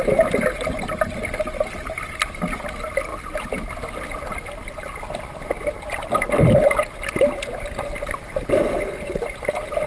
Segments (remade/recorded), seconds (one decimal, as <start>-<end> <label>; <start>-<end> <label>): 0.0-9.9 recorded